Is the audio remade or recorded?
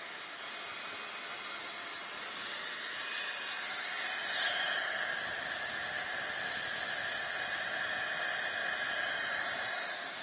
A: recorded